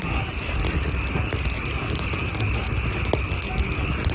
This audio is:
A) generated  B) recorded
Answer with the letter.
B